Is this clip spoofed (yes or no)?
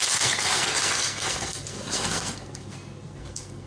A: yes